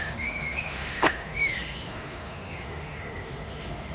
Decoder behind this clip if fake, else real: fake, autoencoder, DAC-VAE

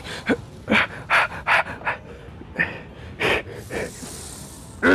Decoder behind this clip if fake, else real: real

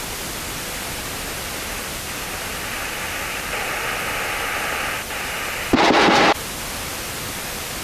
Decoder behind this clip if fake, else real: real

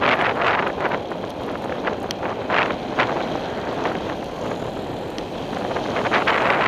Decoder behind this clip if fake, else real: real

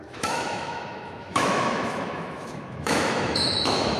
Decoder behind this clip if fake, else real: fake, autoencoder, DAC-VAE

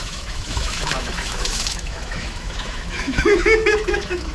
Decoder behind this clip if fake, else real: fake, autoencoder, DAC-VAE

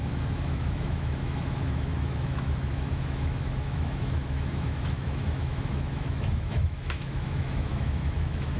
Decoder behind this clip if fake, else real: fake, autoencoder, DAC-VAE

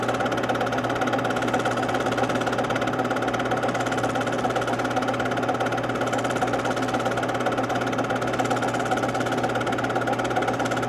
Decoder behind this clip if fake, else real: real